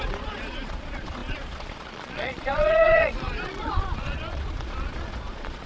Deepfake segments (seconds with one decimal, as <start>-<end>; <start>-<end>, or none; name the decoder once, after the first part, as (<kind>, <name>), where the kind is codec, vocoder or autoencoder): 0.0-5.7 (vocoder, Vocos)